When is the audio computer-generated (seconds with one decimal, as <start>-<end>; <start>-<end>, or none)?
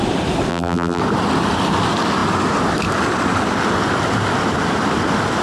0.5-1.0